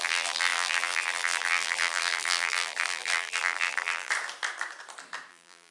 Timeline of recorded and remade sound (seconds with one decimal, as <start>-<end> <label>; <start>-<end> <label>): 0.0-4.1 remade; 4.1-5.3 recorded; 5.3-5.7 remade